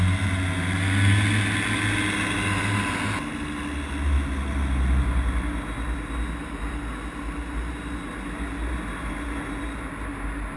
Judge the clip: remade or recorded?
recorded